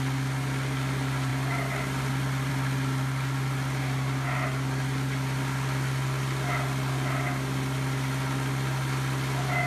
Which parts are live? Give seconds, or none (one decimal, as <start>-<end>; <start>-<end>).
0.0-9.7